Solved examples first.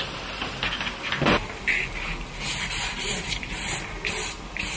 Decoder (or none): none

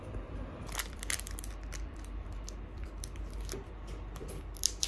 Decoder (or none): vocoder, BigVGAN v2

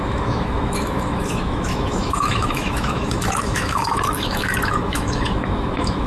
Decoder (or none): autoencoder, DAC-VAE